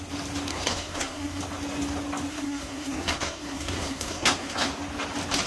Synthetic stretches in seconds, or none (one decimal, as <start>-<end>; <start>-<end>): 0.5-1.4; 2.3-4.7